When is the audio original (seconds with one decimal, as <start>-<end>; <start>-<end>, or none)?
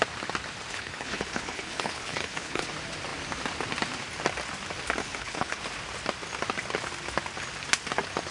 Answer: 0.0-0.7; 2.7-5.0; 5.6-8.3